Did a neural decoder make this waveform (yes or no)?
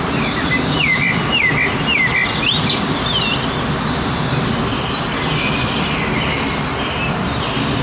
no